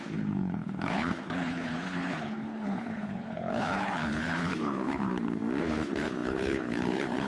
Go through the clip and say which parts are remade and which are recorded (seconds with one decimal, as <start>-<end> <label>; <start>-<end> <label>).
0.0-5.1 remade; 5.1-5.6 recorded; 5.6-7.3 remade